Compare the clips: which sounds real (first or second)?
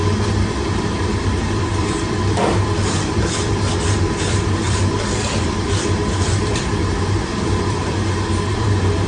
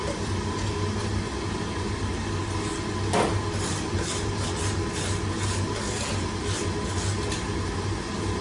second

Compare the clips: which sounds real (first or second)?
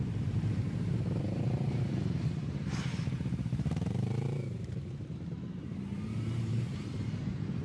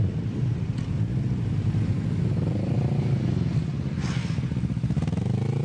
second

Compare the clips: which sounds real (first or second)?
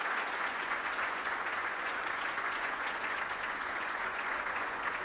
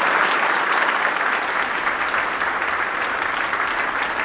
second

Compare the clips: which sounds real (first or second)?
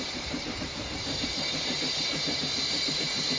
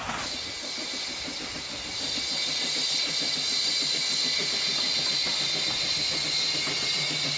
second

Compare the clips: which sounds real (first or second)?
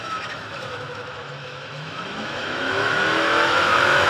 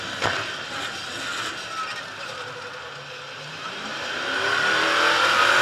second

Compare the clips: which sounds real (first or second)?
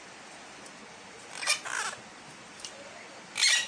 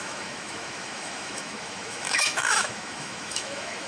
first